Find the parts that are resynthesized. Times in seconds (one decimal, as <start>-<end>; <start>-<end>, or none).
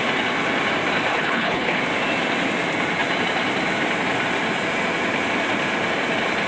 1.1-1.8